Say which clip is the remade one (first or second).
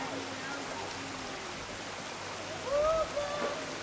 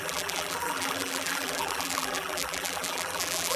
second